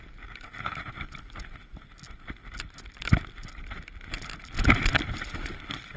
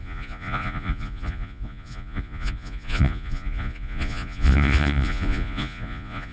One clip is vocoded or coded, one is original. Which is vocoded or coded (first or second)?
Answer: second